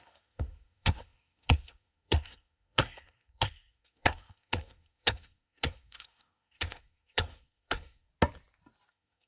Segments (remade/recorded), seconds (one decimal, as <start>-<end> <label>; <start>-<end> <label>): 0.0-8.1 remade; 8.1-8.9 recorded; 8.9-9.3 remade